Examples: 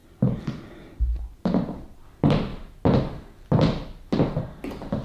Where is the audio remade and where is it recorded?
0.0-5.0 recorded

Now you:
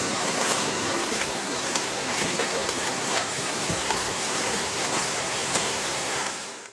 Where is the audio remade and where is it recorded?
0.0-6.7 remade